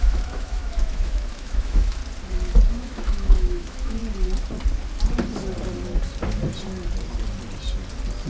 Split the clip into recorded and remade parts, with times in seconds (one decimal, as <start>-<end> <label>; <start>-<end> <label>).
0.0-2.0 remade; 2.0-2.7 recorded; 2.7-4.0 remade; 4.0-8.3 recorded